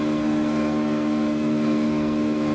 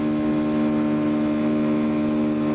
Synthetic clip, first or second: first